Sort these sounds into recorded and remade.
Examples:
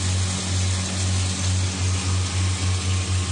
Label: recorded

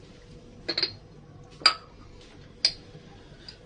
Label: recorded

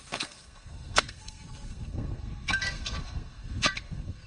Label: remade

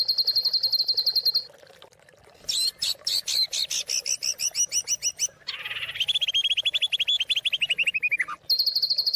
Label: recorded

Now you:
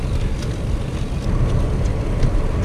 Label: recorded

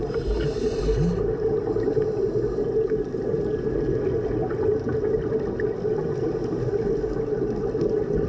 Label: recorded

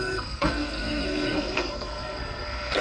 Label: remade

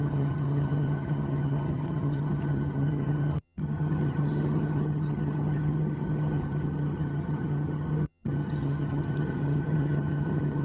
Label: remade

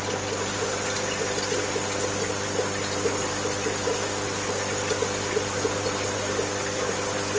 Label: recorded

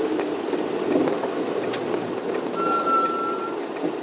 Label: recorded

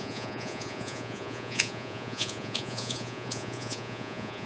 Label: remade